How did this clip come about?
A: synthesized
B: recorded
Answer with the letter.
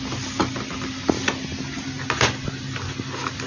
B